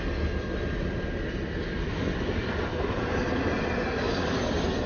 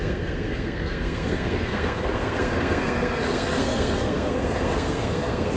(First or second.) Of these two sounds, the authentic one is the first